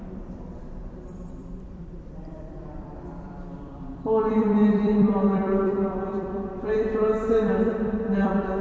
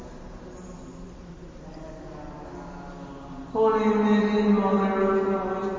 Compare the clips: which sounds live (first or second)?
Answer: second